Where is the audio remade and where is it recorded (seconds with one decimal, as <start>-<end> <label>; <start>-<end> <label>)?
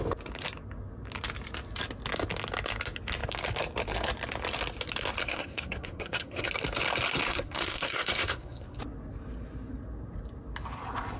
0.0-5.2 recorded; 5.2-6.5 remade; 6.5-7.3 recorded; 7.3-8.8 remade; 8.8-11.2 recorded